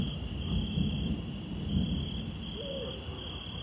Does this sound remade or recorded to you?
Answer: recorded